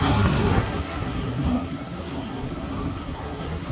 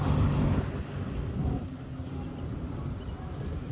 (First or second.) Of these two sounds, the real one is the second